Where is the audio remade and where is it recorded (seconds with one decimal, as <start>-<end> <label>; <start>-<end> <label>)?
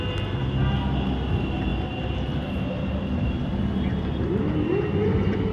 0.0-5.5 recorded